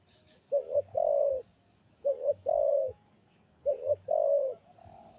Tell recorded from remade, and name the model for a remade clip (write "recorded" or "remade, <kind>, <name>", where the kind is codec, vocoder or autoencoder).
remade, codec, DAC